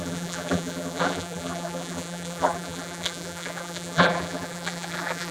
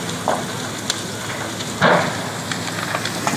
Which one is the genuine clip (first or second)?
second